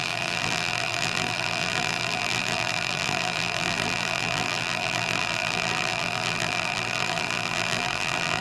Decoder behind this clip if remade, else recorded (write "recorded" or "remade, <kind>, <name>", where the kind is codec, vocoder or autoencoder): remade, vocoder, BigVGAN v2